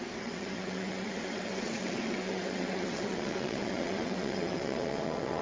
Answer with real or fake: fake